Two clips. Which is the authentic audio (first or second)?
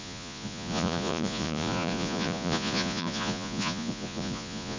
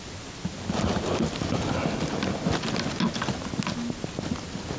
second